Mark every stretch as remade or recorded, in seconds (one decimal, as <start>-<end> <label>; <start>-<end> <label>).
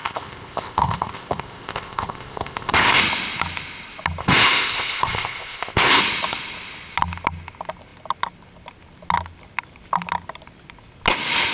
0.0-3.0 remade; 3.0-4.2 recorded; 4.2-6.0 remade; 6.0-11.5 recorded